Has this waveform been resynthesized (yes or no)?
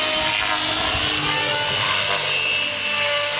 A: no